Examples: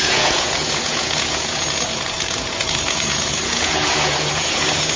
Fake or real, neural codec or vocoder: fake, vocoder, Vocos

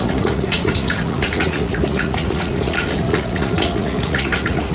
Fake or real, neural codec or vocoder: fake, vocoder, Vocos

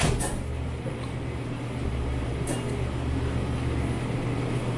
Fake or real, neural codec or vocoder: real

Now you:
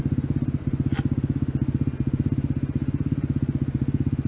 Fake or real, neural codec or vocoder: real